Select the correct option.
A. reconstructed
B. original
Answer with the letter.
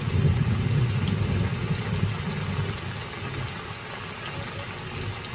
B